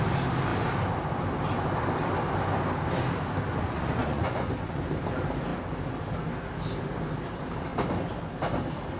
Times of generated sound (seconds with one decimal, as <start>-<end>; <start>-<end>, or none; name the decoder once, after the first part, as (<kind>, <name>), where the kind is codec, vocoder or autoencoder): 3.6-4.8 (vocoder, Vocos)